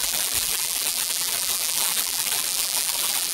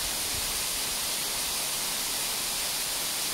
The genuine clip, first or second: second